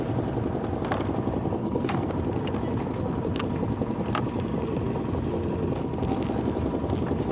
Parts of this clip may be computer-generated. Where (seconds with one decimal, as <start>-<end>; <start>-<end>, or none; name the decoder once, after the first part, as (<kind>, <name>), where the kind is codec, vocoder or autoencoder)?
1.6-2.1 (codec, SNAC)